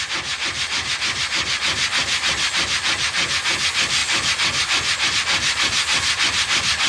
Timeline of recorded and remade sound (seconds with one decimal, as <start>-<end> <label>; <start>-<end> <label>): 0.0-6.9 recorded